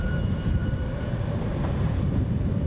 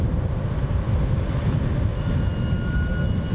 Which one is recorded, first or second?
second